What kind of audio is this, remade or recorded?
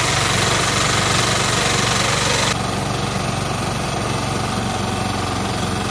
recorded